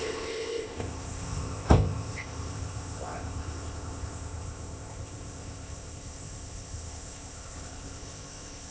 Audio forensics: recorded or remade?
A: remade